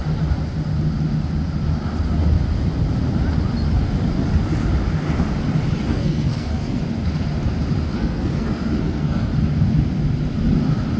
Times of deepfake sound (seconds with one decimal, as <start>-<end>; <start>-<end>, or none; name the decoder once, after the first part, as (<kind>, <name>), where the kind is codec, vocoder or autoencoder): 5.9-6.8 (codec, SNAC); 7.9-9.3